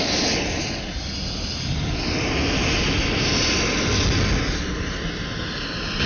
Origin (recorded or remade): recorded